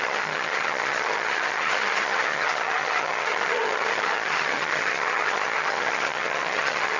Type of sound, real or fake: fake